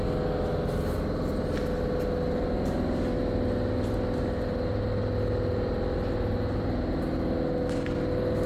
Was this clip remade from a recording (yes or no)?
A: no